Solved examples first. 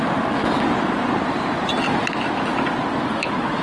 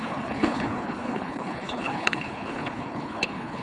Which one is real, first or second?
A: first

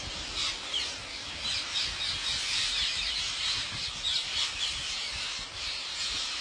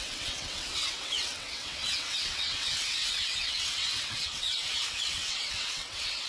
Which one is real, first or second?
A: first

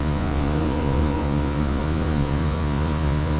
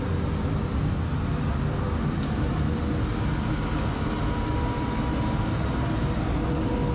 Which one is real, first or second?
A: second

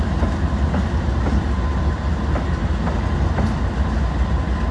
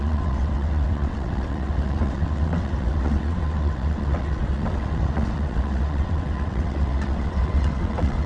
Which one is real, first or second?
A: first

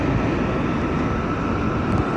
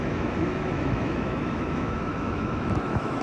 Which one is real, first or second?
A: first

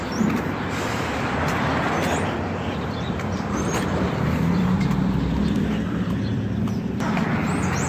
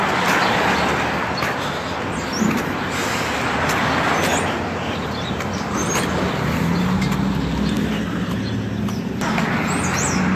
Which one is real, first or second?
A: second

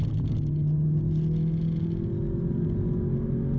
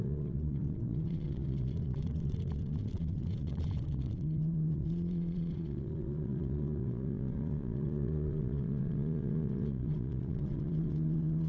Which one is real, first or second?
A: first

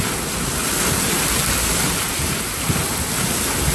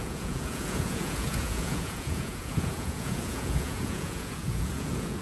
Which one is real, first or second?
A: first